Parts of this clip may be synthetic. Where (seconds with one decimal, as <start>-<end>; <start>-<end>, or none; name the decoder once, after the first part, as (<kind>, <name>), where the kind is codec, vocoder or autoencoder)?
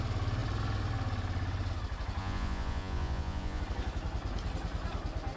2.2-3.6 (vocoder, Vocos)